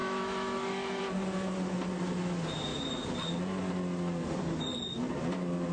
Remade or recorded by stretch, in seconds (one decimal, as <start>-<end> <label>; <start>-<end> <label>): 0.0-1.0 remade; 1.0-5.7 recorded